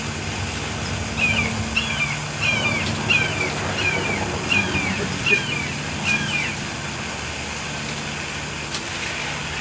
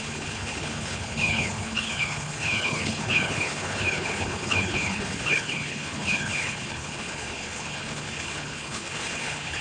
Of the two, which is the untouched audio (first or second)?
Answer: first